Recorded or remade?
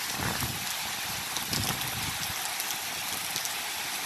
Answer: recorded